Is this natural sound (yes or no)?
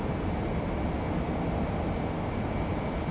yes